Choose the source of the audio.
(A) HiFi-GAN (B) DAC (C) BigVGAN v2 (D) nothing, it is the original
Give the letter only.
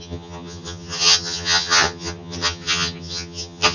A